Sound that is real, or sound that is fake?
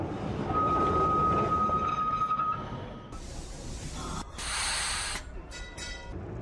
real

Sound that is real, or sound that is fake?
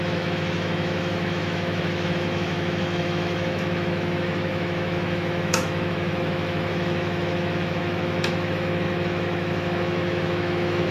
fake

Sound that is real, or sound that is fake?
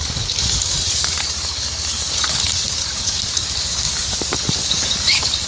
fake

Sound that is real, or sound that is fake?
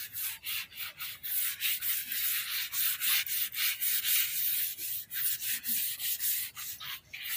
real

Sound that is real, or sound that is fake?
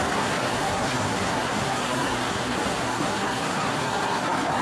fake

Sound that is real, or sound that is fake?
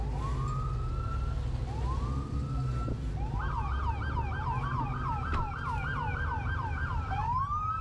real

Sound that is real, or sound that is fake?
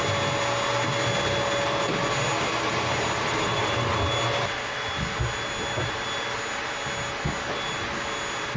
real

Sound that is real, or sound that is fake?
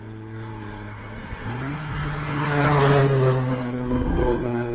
fake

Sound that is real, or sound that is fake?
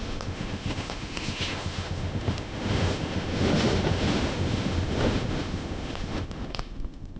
fake